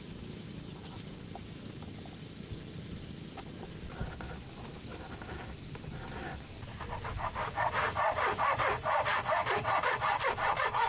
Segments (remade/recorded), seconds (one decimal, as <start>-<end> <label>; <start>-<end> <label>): 0.0-4.0 remade; 4.0-4.7 recorded; 4.7-9.1 remade; 9.1-9.8 recorded; 9.8-10.9 remade